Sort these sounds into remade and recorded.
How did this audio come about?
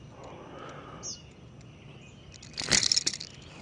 recorded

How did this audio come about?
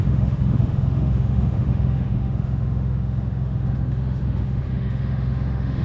remade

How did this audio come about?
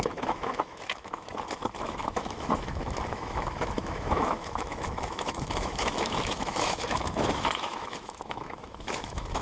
remade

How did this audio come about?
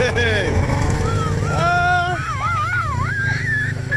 remade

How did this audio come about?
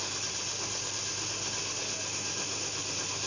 recorded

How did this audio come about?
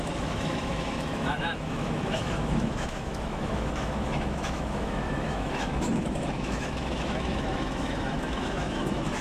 remade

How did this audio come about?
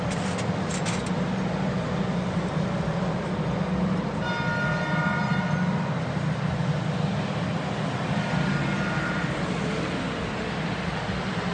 recorded